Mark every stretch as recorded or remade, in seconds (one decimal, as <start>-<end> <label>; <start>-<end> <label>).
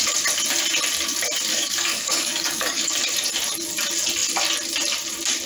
0.0-1.5 recorded; 1.5-2.9 remade; 2.9-5.5 recorded